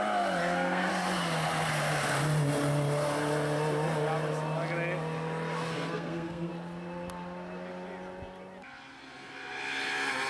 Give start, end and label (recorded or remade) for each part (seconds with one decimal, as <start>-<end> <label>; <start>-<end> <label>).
0.0-0.4 recorded; 0.4-0.9 remade; 0.9-5.7 recorded; 5.7-6.5 remade; 6.5-10.3 recorded